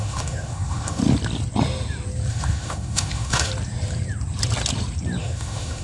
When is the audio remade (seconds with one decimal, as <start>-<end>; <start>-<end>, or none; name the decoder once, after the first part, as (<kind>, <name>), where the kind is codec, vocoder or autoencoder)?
0.0-1.0 (autoencoder, DAC-VAE); 2.3-3.5; 5.2-5.8

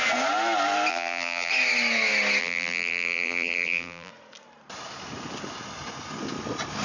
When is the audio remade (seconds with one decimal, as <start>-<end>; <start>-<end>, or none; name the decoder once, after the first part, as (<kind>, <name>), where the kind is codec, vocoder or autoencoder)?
0.9-1.5 (vocoder, BigVGAN v2); 2.4-4.1

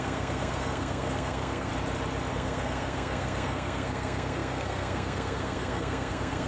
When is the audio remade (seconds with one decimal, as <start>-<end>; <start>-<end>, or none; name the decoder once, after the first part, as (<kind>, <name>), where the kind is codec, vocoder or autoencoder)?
0.0-1.7 (codec, SNAC); 2.3-6.5

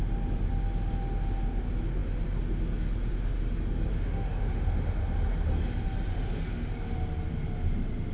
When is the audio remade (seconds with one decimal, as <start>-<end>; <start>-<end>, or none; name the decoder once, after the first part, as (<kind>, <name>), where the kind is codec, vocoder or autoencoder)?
3.9-5.0 (autoencoder, DAC-VAE); 6.1-6.7

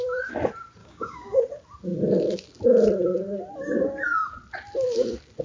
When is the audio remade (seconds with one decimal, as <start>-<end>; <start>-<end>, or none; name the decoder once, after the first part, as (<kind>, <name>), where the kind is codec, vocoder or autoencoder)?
0.8-1.4 (codec, DAC)